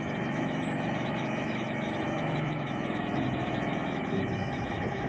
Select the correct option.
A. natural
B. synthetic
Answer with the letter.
B